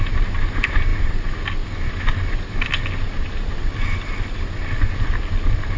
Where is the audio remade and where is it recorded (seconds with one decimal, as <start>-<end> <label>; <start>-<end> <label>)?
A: 0.0-5.8 recorded